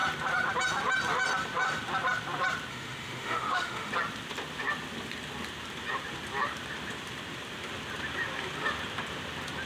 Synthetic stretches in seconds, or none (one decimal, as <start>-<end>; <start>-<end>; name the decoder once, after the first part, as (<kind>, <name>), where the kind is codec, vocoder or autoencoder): 2.7-3.9 (autoencoder, DAC-VAE)